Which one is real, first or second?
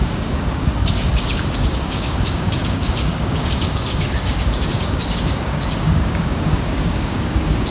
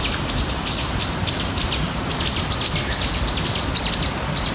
second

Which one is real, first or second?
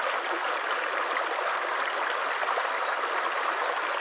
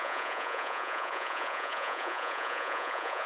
first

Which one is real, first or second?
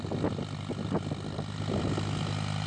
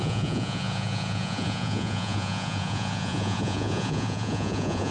first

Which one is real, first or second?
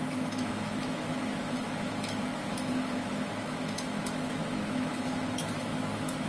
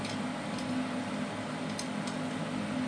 second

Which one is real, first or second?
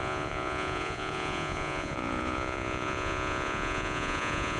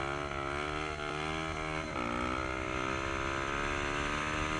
second